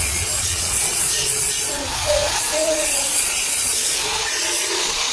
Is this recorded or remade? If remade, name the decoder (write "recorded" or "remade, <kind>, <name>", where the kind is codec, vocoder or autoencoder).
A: remade, vocoder, Vocos